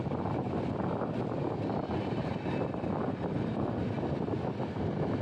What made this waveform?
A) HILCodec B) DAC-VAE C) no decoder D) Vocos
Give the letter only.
C